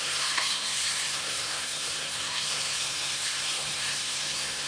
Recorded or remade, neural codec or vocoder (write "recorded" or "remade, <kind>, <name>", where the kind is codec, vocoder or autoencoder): remade, codec, SNAC